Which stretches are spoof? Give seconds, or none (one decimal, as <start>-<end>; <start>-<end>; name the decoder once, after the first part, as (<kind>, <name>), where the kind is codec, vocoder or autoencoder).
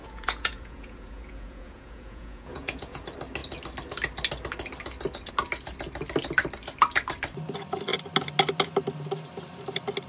0.0-3.0 (vocoder, Vocos)